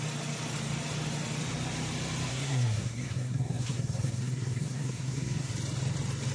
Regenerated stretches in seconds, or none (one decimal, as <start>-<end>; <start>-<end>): 2.3-5.5